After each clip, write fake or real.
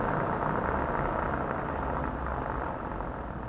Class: real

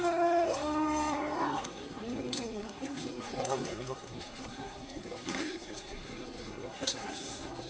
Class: fake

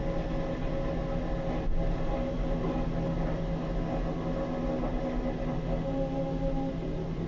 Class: real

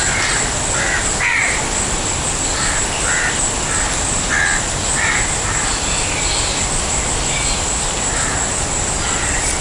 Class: real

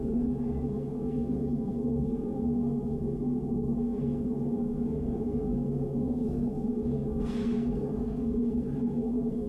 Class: fake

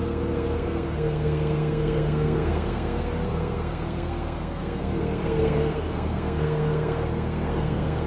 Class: fake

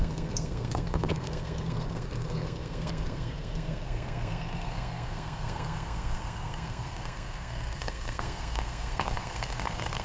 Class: fake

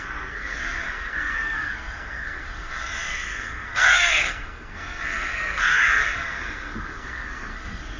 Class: fake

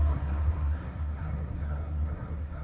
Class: fake